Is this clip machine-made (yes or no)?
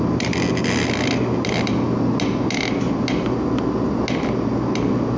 no